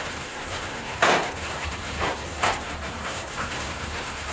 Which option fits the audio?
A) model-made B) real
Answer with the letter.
A